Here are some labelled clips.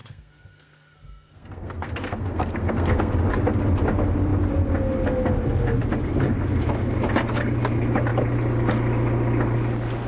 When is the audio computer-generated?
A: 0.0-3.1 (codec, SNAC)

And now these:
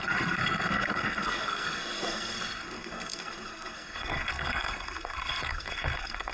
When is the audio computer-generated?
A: 0.0-6.3 (codec, SNAC)

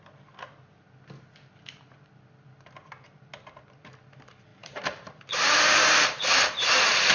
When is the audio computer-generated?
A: 4.5-7.1 (vocoder, BigVGAN v2)

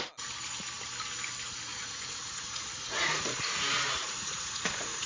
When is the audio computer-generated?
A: 1.7-5.1 (vocoder, Vocos)

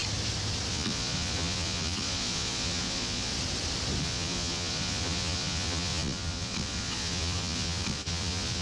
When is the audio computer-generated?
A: 0.7-3.3 (vocoder, Vocos); 4.0-8.6

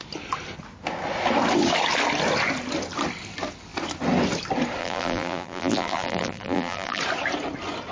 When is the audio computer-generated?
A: 4.8-7.0 (vocoder, BigVGAN v2)

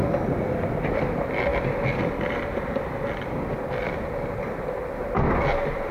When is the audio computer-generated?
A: none

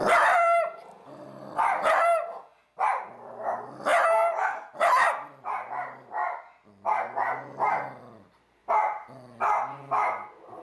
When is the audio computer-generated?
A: 0.0-3.9 (vocoder, BigVGAN v2); 4.7-6.2; 8.0-8.6